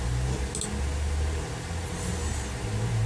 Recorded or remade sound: recorded